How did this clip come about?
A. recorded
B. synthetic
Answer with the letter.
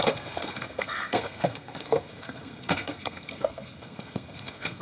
B